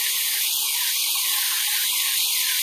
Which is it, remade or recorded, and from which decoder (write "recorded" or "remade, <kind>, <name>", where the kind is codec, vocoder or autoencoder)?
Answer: recorded